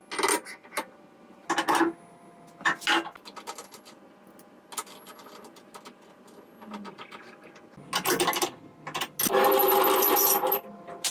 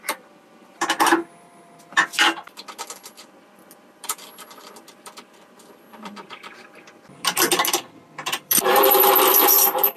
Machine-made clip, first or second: second